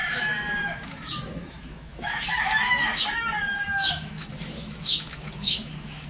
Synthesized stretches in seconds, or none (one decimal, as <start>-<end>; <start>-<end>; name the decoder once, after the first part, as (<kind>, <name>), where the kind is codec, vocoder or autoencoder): 0.0-6.1 (autoencoder, DAC-VAE)